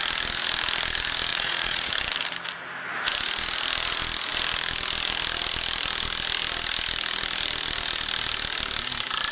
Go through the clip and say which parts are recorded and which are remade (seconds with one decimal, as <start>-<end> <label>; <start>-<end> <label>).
0.0-1.3 recorded; 1.3-1.9 remade; 1.9-9.3 recorded